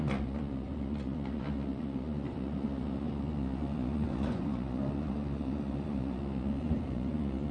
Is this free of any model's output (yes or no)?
no